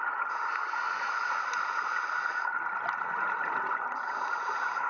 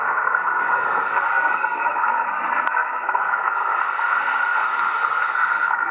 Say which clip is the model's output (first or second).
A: second